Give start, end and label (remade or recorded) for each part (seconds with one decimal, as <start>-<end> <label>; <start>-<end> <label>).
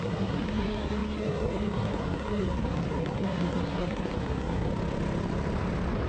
0.0-4.7 remade; 4.7-6.1 recorded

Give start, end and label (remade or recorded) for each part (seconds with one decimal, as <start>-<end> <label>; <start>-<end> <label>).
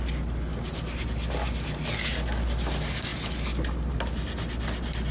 0.0-5.1 recorded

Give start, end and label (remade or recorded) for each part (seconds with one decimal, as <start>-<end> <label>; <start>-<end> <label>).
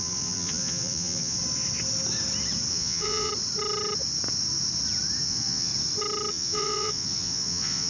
0.0-1.4 remade; 1.4-2.7 recorded; 2.7-3.3 remade; 3.3-5.2 recorded; 5.2-5.7 remade; 5.7-6.3 recorded; 6.3-7.9 remade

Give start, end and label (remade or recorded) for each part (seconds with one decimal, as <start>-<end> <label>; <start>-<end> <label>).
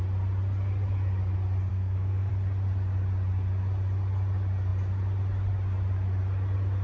0.0-1.7 recorded; 1.7-2.3 remade; 2.3-6.8 recorded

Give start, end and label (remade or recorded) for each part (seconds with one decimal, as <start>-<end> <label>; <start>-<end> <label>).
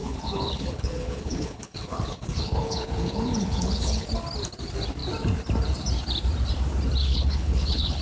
0.0-4.1 remade; 4.1-7.0 recorded; 7.0-8.0 remade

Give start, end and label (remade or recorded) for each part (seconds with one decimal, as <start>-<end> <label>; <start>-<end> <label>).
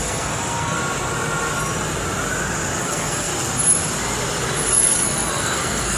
0.0-0.8 remade; 0.8-2.8 recorded; 2.8-3.3 remade; 3.3-4.7 recorded; 4.7-6.0 remade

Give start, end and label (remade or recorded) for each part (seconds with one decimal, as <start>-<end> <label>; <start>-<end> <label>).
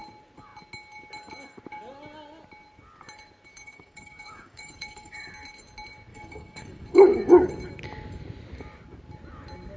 0.0-3.5 recorded; 3.5-5.3 remade; 5.3-6.1 recorded; 6.1-7.5 remade; 7.5-9.8 recorded